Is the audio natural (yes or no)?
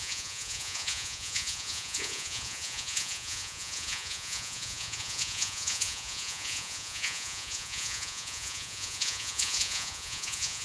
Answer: no